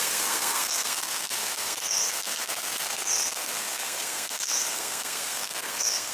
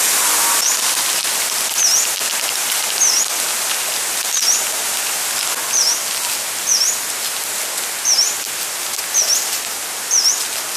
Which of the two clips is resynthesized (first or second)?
first